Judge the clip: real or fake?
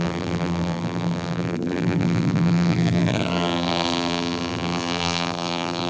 fake